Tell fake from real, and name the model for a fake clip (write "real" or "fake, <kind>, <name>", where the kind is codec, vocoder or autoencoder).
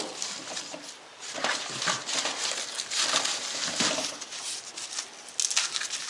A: real